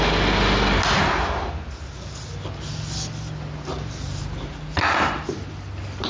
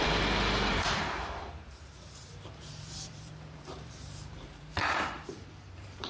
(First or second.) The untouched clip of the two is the first